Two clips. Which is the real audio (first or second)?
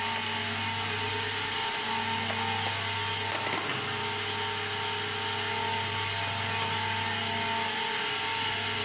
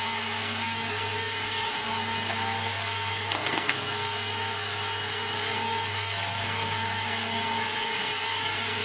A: first